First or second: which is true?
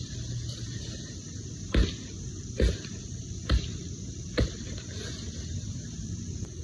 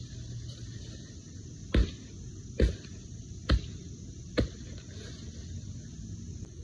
second